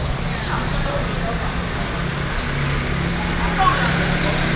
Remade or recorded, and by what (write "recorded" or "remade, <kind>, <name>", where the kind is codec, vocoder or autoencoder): recorded